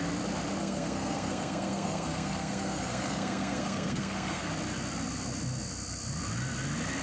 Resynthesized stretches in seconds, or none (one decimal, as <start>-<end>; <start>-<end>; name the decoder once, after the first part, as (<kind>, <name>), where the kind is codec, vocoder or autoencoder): 0.6-4.5 (codec, SNAC)